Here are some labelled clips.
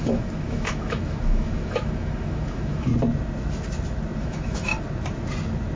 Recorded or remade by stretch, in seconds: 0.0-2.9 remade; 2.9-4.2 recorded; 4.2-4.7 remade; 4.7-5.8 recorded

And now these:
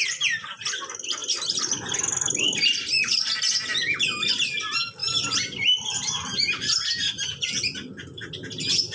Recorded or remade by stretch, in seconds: 0.0-8.9 recorded

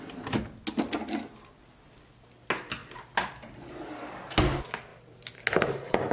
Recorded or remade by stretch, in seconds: 0.0-6.1 recorded

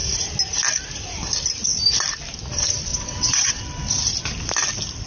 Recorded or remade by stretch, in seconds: 0.0-2.9 recorded; 2.9-3.6 remade; 3.6-5.1 recorded

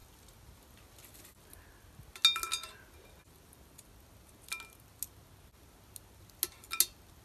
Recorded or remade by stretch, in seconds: 0.0-7.2 recorded

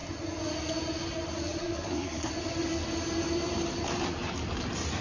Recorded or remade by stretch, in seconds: 0.0-1.6 recorded; 1.6-2.3 remade; 2.3-5.0 recorded

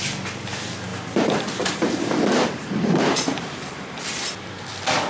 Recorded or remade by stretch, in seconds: 0.0-0.9 recorded; 0.9-4.0 remade; 4.0-5.1 recorded